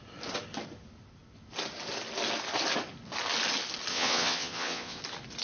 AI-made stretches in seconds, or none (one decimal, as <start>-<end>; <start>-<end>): 3.9-5.0